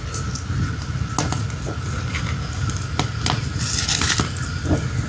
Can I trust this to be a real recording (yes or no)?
yes